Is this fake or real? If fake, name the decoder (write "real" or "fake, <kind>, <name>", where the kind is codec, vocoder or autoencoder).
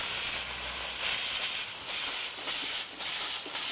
real